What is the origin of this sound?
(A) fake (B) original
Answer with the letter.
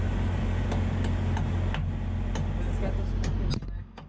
B